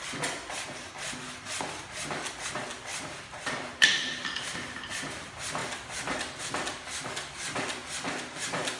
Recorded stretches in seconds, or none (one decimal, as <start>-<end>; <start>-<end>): 0.0-2.9; 4.9-8.8